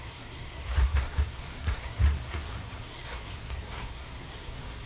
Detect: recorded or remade remade